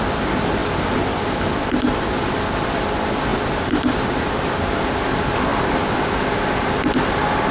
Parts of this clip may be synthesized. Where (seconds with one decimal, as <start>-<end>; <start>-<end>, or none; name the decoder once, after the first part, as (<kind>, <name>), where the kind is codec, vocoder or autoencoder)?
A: none